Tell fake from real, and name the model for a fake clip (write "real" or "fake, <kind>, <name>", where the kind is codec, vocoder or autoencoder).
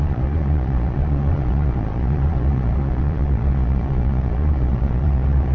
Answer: fake, vocoder, Vocos